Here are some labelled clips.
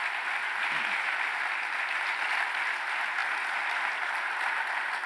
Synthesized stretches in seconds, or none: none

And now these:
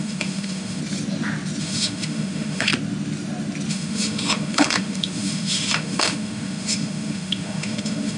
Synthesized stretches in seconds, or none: 0.0-0.8 (autoencoder, DAC-VAE); 1.6-2.7; 3.7-8.2

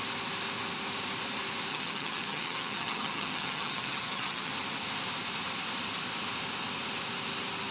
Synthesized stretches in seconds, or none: 1.7-4.5 (vocoder, HiFi-GAN)

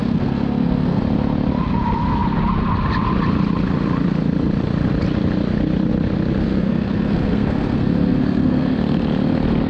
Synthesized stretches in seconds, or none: 0.0-1.0 (codec, SNAC); 6.4-8.8

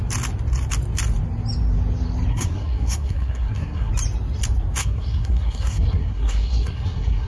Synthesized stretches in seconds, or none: 2.3-3.9 (codec, SNAC); 4.8-7.3

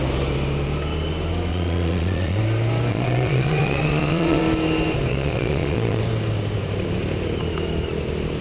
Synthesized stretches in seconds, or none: 1.5-2.4 (vocoder, Vocos); 2.9-4.4; 5.1-6.0

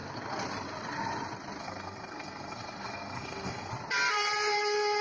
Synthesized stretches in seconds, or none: 1.6-3.7 (codec, SNAC)

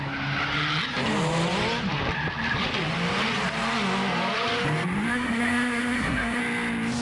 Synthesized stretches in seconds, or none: 5.1-6.4 (codec, SNAC)